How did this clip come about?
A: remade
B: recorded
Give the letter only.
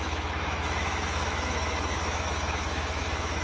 A